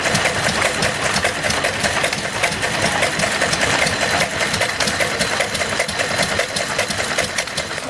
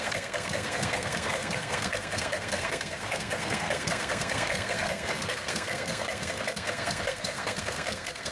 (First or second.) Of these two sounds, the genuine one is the first